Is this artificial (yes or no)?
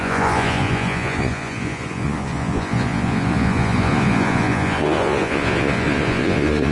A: yes